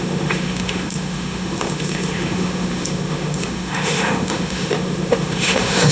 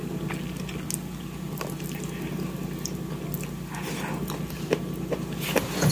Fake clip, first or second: first